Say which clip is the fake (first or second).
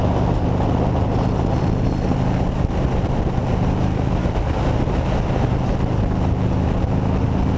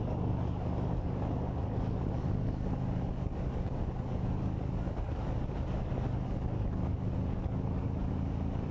second